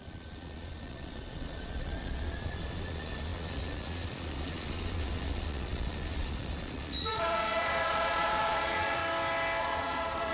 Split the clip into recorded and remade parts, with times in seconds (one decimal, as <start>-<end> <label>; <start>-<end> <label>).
0.0-9.0 remade; 9.0-9.6 recorded; 9.6-10.3 remade